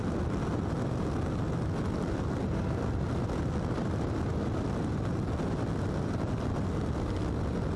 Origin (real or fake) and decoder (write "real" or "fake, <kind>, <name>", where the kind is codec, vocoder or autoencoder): real